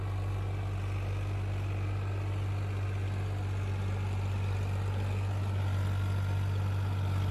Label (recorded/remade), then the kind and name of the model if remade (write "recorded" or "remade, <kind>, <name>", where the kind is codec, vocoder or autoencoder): recorded